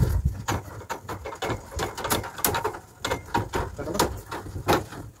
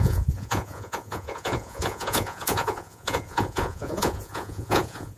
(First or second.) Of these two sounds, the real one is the first